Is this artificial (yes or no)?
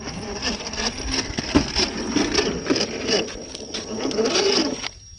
no